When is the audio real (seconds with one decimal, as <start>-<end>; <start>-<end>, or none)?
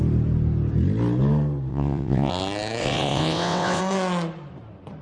0.0-1.7; 2.3-2.8; 3.8-5.0